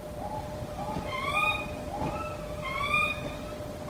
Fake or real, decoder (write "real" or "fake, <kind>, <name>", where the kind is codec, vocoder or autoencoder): fake, vocoder, BigVGAN v2